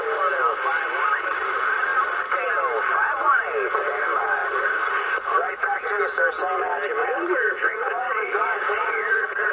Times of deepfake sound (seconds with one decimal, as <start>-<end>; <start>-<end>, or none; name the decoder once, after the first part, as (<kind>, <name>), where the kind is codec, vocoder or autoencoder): 4.4-6.0 (vocoder, Vocos); 7.0-9.5